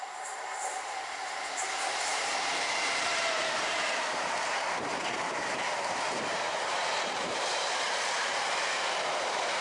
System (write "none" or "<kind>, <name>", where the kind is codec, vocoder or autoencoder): vocoder, BigVGAN v2